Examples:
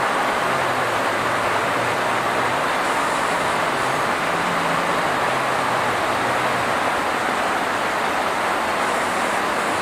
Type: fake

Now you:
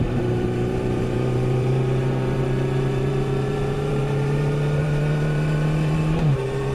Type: fake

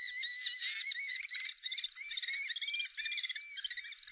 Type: real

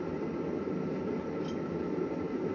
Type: real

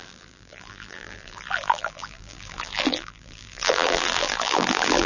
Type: fake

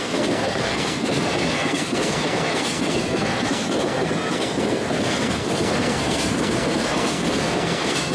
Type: fake